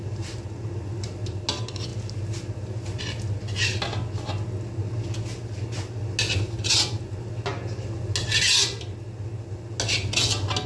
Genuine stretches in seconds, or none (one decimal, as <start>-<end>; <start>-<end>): 0.0-10.7